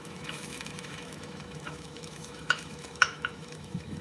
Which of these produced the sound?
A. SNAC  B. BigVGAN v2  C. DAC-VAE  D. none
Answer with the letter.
C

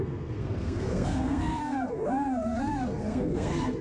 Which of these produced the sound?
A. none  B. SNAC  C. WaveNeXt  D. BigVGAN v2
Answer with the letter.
B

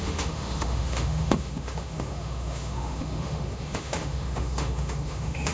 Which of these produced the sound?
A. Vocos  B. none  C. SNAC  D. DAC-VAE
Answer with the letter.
D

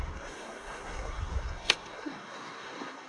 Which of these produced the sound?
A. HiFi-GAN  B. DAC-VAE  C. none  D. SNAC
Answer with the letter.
D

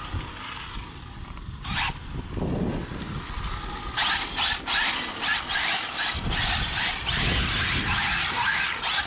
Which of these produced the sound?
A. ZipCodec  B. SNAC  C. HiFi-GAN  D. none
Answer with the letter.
D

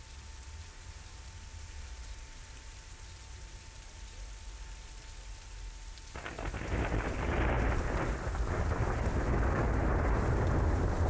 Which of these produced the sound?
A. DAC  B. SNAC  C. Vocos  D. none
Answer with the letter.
D